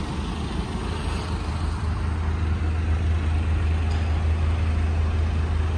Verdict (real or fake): real